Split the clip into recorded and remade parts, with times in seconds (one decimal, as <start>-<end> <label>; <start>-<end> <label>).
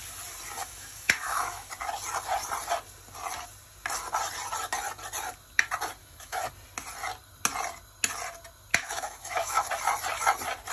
0.0-0.6 recorded; 0.6-1.7 remade; 1.7-6.0 recorded; 6.0-6.5 remade; 6.5-8.7 recorded; 8.7-9.7 remade; 9.7-10.7 recorded